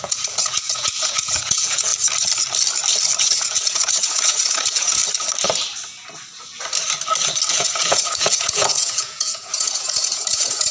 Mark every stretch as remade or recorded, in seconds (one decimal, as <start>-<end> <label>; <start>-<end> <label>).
0.0-1.9 remade; 1.9-3.2 recorded; 3.2-5.0 remade; 5.0-7.5 recorded; 7.5-10.7 remade